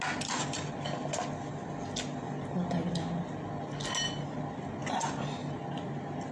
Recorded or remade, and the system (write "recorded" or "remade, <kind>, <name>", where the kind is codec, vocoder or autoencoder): recorded